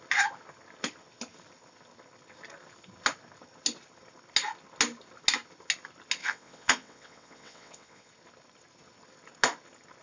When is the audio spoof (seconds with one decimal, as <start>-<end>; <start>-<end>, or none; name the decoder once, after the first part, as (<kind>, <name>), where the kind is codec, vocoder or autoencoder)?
6.2-8.1 (vocoder, WaveNeXt)